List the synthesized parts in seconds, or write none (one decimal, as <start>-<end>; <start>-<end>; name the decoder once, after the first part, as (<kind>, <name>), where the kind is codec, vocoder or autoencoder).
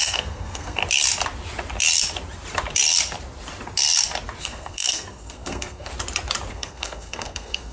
0.0-0.8 (codec, SNAC); 4.4-5.9; 6.5-7.7